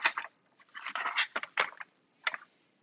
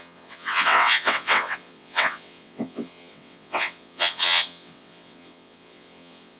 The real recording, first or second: first